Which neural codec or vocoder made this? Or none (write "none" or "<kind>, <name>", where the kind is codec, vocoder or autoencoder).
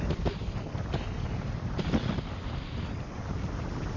none